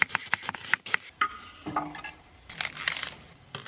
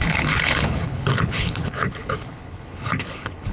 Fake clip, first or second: second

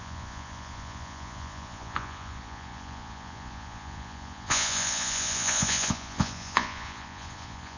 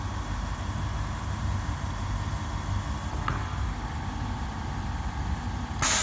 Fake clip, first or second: first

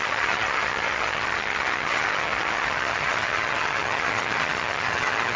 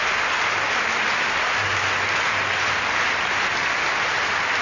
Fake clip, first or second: first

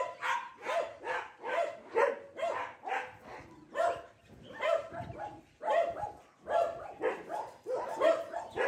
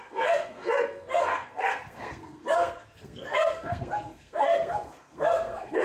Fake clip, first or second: second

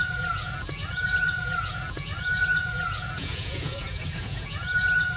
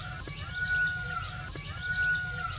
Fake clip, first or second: first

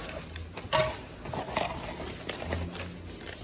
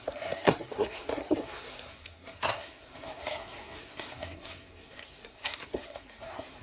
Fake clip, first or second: second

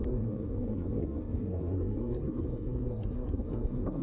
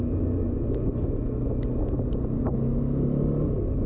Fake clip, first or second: first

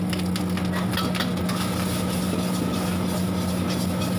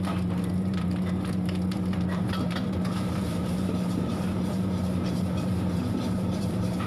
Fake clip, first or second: second